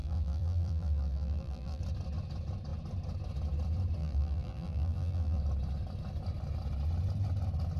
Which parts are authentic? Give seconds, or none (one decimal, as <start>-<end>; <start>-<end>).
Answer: 1.8-4.0; 5.4-7.8